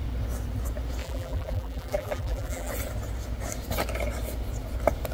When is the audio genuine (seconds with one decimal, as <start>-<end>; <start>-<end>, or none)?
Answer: 0.0-1.0; 2.7-5.1